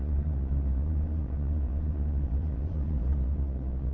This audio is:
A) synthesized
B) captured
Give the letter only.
A